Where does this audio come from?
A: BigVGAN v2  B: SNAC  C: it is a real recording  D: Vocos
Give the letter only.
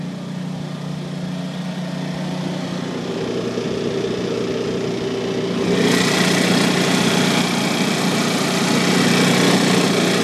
C